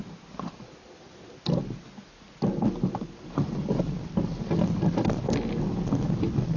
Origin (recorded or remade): recorded